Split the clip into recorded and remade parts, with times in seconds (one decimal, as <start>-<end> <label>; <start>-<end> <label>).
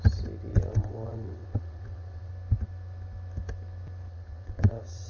0.0-0.5 recorded; 0.5-2.3 remade; 2.3-4.1 recorded; 4.1-5.1 remade